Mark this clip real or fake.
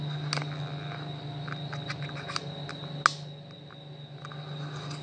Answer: real